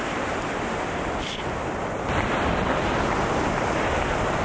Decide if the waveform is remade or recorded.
recorded